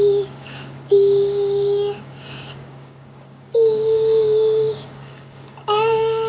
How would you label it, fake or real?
fake